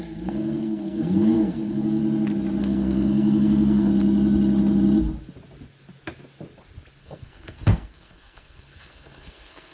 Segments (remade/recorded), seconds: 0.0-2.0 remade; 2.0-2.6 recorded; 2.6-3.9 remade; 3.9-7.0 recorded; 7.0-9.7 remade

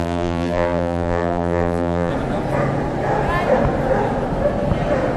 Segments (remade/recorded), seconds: 0.0-2.1 remade; 2.1-5.2 recorded

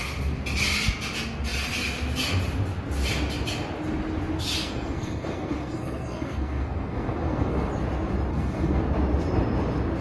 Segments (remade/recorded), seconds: 0.0-4.6 recorded; 4.6-7.7 remade; 7.7-8.3 recorded; 8.3-8.8 remade; 8.8-10.0 recorded

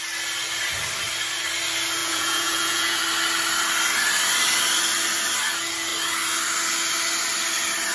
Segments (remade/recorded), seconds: 0.0-2.0 recorded; 2.0-3.0 remade; 3.0-7.9 recorded

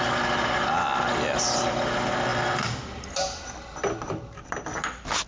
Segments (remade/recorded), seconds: 0.0-5.3 recorded

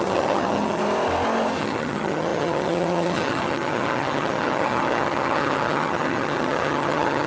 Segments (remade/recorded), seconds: 0.0-0.8 remade; 0.8-1.6 recorded; 1.6-7.3 remade

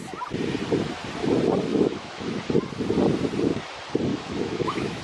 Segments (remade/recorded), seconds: 0.0-1.7 recorded; 1.7-2.4 remade; 2.4-4.1 recorded; 4.1-5.0 remade

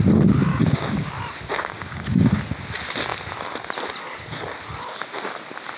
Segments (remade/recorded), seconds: 0.0-0.5 recorded; 0.5-1.1 remade; 1.1-1.5 recorded; 1.5-2.3 remade; 2.3-5.8 recorded